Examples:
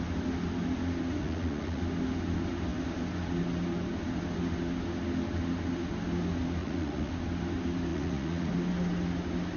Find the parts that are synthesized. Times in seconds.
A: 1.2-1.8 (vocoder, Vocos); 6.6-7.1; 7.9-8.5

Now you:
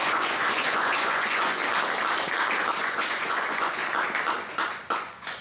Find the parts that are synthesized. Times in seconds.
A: 0.0-1.6 (vocoder, Vocos); 2.8-3.8; 4.4-5.4

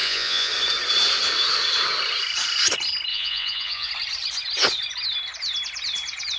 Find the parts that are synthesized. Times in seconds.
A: 0.0-0.5 (vocoder, Vocos); 3.1-3.9

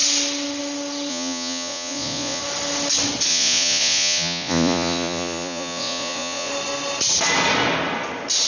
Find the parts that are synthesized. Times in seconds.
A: 1.1-2.4 (vocoder, Vocos); 3.3-6.5

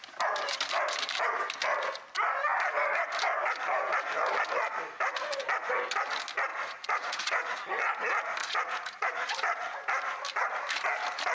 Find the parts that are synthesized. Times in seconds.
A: 6.5-7.6 (vocoder, Vocos); 8.4-9.3

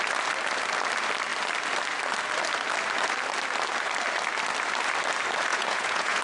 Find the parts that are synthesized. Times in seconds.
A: 5.5-6.2 (vocoder, Vocos)

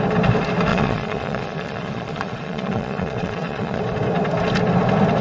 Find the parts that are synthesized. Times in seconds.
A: 0.7-3.8 (vocoder, Vocos)

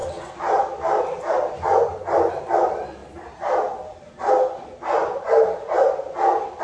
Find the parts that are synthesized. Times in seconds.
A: none